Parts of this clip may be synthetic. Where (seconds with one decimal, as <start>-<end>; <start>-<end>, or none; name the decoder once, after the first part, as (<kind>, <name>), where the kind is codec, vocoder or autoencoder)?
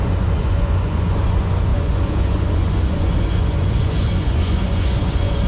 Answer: 0.0-5.5 (vocoder, Vocos)